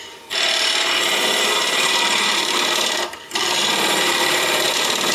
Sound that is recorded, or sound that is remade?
remade